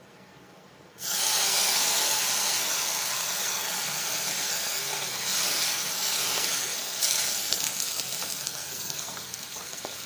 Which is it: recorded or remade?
remade